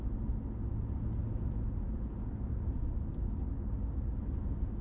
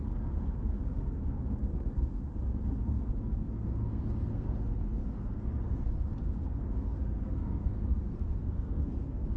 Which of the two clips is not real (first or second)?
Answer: second